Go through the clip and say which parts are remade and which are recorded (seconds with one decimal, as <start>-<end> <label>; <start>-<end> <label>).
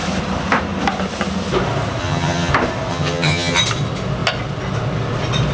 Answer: 0.0-2.0 recorded; 2.0-2.5 remade; 2.5-2.9 recorded; 2.9-3.6 remade; 3.6-5.5 recorded